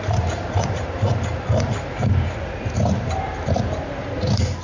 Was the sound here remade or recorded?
remade